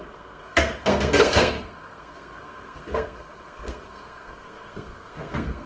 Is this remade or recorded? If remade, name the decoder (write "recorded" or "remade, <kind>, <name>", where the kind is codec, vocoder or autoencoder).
remade, codec, SNAC